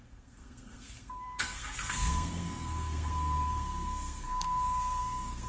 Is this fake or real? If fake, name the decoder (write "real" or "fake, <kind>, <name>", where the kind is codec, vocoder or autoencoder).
fake, codec, SNAC